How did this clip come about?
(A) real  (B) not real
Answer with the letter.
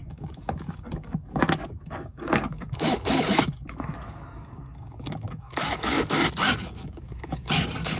B